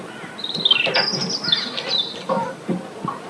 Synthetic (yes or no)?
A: no